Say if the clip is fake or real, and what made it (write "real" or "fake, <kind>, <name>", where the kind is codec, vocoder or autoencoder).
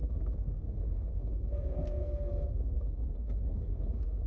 fake, codec, SNAC